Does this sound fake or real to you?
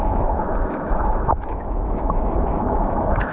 fake